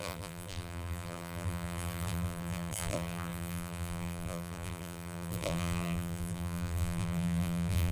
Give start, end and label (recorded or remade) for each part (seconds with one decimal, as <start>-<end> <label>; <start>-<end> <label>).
0.0-7.9 remade